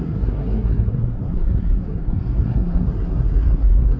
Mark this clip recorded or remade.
remade